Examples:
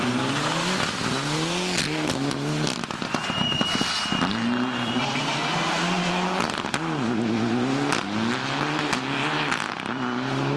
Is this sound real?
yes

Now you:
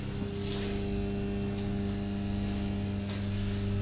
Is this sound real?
yes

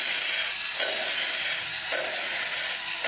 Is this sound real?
yes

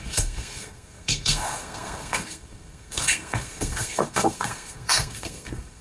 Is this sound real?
no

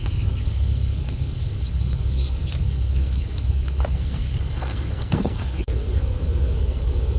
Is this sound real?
no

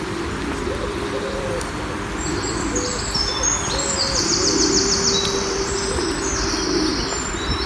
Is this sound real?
yes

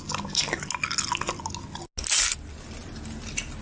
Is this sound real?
yes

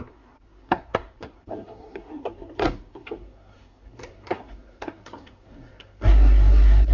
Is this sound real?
no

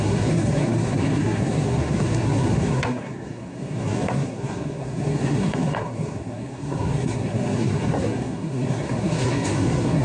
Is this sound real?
no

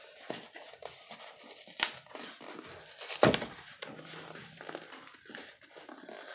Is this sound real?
yes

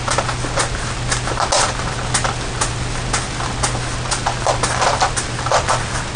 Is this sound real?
yes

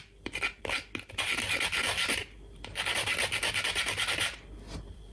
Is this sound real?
yes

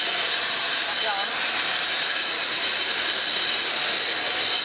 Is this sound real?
yes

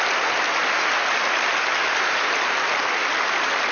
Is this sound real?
yes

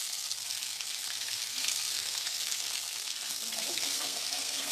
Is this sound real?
no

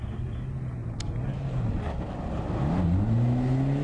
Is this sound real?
yes